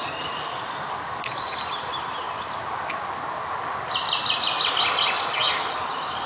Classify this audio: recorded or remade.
recorded